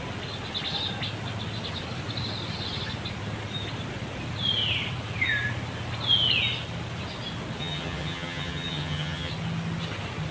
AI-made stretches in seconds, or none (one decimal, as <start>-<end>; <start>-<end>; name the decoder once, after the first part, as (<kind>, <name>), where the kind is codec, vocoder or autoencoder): 7.6-9.3 (vocoder, HiFi-GAN)